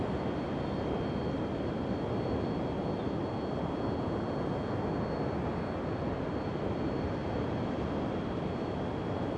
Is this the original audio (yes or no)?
yes